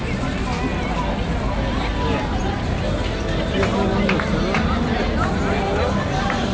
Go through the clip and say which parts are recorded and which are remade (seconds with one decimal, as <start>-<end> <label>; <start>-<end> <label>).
0.0-6.5 recorded